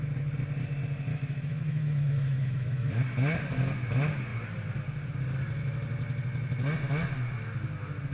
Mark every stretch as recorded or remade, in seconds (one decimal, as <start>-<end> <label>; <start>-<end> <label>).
0.0-1.1 recorded; 1.1-2.9 remade; 2.9-8.1 recorded